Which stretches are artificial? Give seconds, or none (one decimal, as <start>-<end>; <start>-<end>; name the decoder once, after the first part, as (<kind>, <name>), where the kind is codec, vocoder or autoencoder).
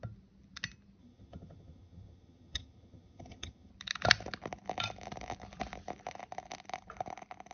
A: 1.0-3.7 (vocoder, HiFi-GAN)